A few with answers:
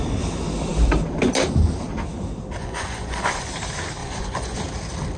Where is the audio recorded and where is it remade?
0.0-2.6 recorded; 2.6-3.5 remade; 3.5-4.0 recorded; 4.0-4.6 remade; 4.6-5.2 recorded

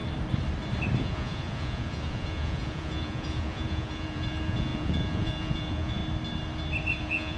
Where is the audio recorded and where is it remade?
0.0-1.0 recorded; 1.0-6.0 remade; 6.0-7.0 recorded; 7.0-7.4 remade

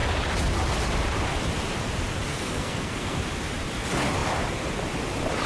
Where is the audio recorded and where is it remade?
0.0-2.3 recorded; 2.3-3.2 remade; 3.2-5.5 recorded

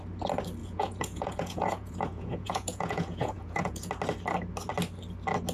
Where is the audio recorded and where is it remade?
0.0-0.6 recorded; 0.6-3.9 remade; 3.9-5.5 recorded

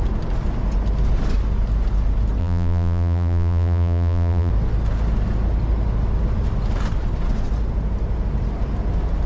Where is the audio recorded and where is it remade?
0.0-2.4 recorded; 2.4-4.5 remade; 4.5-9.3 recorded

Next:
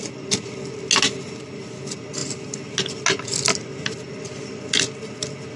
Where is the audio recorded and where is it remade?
0.0-5.6 recorded

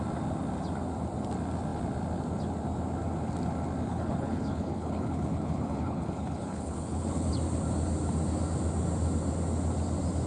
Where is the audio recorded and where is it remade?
0.0-3.9 recorded; 3.9-7.3 remade; 7.3-10.3 recorded